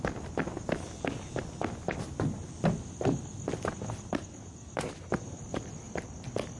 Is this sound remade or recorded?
recorded